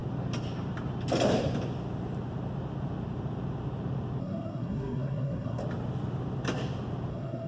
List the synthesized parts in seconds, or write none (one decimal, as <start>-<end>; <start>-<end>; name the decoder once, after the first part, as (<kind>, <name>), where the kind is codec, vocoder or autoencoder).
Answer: 4.2-5.6 (codec, SNAC); 7.1-7.5